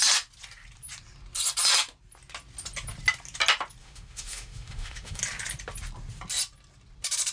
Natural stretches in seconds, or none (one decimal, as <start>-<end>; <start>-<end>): 0.0-3.8; 5.2-7.3